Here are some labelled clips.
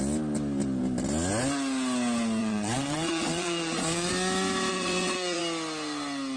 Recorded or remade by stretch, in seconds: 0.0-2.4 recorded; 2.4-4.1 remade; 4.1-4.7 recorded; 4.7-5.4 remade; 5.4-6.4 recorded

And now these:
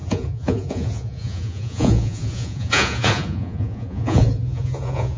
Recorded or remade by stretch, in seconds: 0.0-5.2 remade

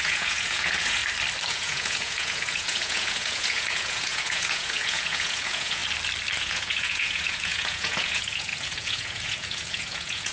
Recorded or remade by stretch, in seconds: 0.0-1.0 remade; 1.0-1.5 recorded; 1.5-5.8 remade; 5.8-6.4 recorded; 6.4-10.3 remade

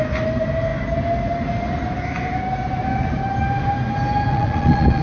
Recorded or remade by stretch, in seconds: 0.0-4.3 recorded; 4.3-5.0 remade

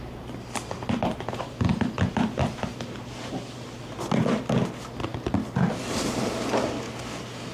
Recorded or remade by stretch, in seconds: 0.0-7.5 recorded